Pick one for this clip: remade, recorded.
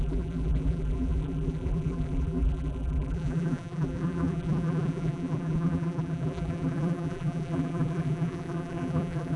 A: remade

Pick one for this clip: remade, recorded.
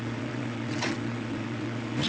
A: remade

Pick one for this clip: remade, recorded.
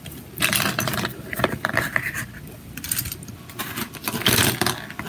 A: recorded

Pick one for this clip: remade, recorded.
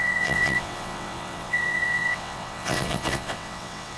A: remade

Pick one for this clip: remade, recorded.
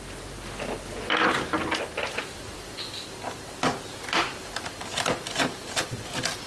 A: recorded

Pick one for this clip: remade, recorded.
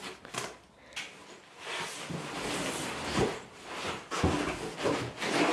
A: recorded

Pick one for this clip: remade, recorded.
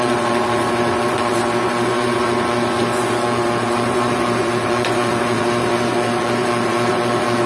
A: remade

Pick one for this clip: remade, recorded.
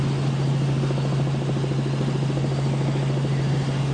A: recorded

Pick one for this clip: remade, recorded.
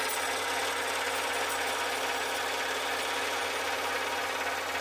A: recorded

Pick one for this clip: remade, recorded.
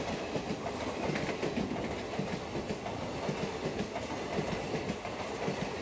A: recorded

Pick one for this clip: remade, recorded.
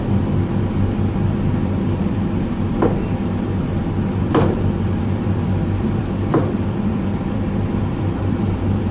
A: remade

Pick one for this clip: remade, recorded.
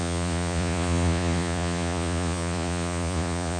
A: remade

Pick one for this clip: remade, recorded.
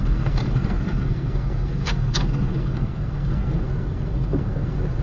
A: remade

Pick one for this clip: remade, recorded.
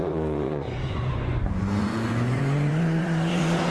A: remade